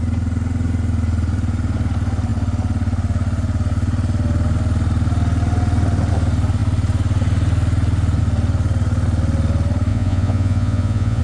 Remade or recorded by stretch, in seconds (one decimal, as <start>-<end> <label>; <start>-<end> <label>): 0.0-9.9 recorded; 9.9-11.2 remade